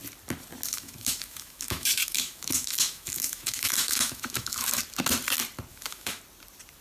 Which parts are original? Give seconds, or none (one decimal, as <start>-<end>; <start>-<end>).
0.0-0.7; 4.8-5.7; 6.2-6.8